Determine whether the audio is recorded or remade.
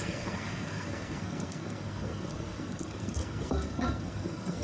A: remade